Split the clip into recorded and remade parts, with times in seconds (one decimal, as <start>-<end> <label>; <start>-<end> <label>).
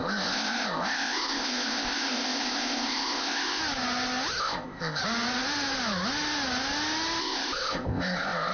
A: 0.0-3.6 remade; 3.6-4.4 recorded; 4.4-5.0 remade; 5.0-7.2 recorded; 7.2-8.5 remade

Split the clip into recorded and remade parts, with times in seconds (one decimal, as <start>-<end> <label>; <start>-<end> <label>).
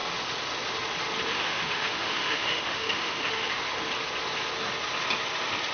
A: 0.0-1.3 recorded; 1.3-3.6 remade; 3.6-5.7 recorded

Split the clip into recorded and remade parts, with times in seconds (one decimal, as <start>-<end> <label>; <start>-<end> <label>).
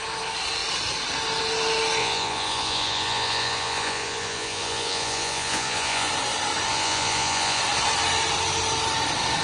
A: 0.0-2.0 recorded; 2.0-6.1 remade; 6.1-6.7 recorded; 6.7-7.6 remade; 7.6-9.4 recorded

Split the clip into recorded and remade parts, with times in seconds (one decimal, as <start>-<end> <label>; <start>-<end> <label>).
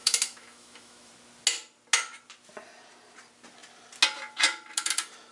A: 0.0-1.1 remade; 1.1-5.3 recorded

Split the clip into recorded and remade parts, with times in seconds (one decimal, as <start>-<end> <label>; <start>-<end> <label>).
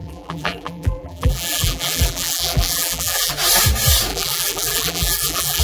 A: 0.0-3.3 remade; 3.3-4.1 recorded; 4.1-5.6 remade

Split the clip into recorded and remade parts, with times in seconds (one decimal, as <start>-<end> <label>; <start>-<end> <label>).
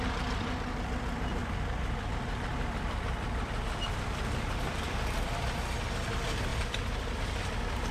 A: 0.0-1.4 recorded; 1.4-2.1 remade; 2.1-2.5 recorded; 2.5-5.6 remade; 5.6-6.5 recorded; 6.5-7.2 remade; 7.2-7.9 recorded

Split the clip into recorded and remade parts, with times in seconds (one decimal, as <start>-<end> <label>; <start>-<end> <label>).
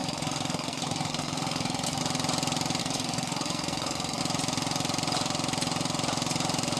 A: 0.0-2.0 remade; 2.0-2.8 recorded; 2.8-4.2 remade; 4.2-6.8 recorded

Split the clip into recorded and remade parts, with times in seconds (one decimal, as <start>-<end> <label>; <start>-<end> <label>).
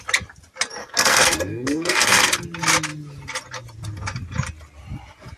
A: 0.0-0.8 recorded; 0.8-2.4 remade; 2.4-5.4 recorded